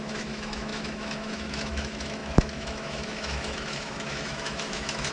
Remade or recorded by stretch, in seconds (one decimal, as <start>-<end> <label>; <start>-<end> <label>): 0.0-5.1 remade